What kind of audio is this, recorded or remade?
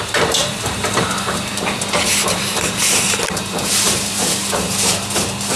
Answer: remade